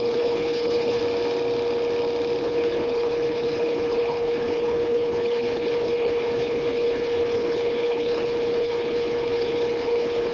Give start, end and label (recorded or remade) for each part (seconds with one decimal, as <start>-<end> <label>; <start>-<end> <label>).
0.0-1.0 remade; 1.0-2.4 recorded; 2.4-10.3 remade